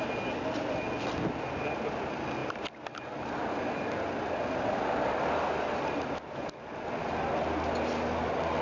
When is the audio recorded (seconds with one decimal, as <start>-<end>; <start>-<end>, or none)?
0.0-8.6